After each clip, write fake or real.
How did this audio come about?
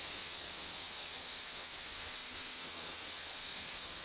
fake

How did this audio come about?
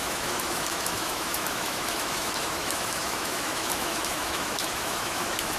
fake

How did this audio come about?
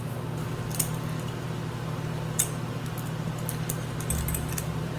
real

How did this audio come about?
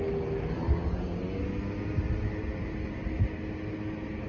real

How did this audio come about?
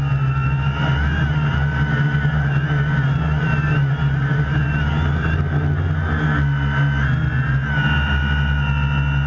real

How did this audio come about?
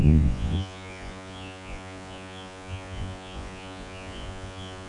fake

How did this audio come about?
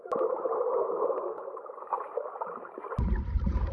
fake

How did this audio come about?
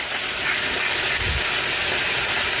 real